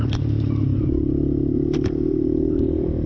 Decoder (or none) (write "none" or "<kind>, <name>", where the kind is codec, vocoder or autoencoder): vocoder, BigVGAN v2